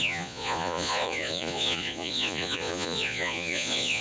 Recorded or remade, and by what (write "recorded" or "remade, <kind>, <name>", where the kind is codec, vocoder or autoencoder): remade, vocoder, Vocos